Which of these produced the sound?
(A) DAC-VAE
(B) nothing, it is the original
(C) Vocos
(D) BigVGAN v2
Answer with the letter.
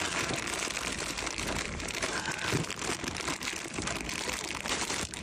D